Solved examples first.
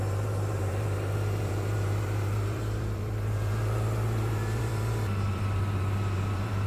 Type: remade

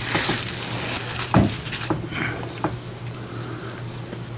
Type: recorded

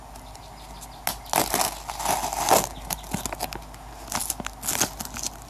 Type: recorded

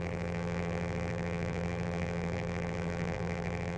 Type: remade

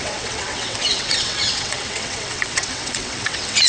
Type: remade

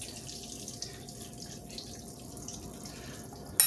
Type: recorded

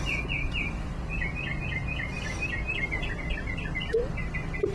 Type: recorded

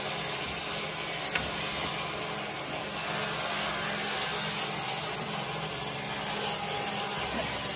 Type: recorded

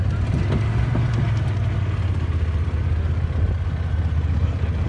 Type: recorded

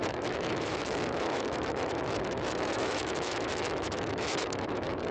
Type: remade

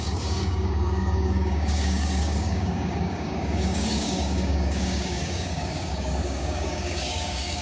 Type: remade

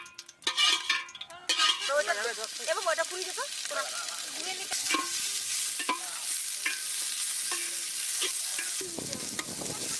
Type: recorded